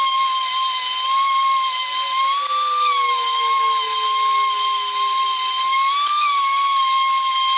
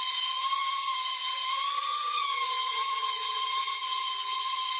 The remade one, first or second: second